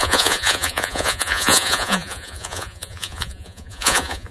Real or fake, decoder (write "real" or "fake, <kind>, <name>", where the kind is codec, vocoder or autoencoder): fake, vocoder, Vocos